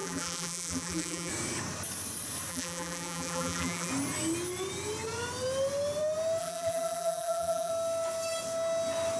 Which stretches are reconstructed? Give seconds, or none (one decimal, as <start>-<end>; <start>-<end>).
0.0-1.3; 2.5-3.9; 6.4-7.7